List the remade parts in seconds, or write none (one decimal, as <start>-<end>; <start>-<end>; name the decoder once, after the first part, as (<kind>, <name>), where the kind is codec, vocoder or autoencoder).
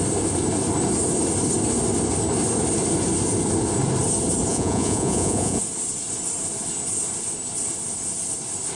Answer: 4.5-5.6 (vocoder, Vocos)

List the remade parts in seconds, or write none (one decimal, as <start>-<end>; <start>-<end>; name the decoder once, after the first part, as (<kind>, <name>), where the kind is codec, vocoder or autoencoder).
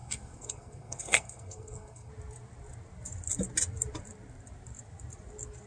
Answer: 0.0-2.1 (codec, SNAC)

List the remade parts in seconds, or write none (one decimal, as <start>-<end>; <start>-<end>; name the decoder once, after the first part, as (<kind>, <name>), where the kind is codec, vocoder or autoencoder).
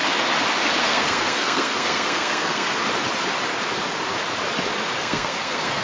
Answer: 0.8-2.8 (codec, SNAC); 5.0-5.8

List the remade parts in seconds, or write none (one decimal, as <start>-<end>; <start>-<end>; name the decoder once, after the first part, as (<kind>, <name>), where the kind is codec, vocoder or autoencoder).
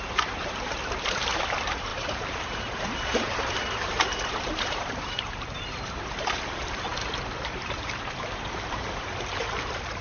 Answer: 0.0-6.9 (vocoder, BigVGAN v2); 7.4-10.0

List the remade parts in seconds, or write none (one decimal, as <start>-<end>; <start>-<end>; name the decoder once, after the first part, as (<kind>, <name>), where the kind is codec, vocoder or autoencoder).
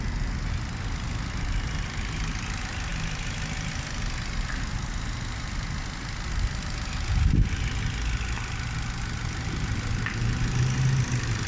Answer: none